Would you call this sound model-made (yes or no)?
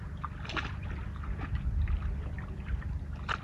no